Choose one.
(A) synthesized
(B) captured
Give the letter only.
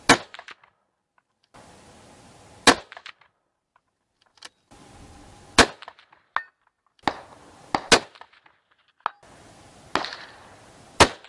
B